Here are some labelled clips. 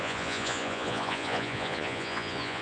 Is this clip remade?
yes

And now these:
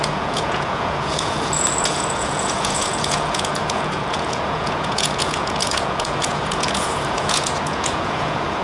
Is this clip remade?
yes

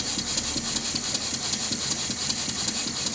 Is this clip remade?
no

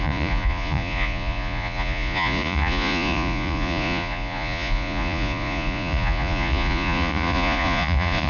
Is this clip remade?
yes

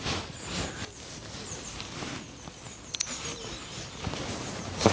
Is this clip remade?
no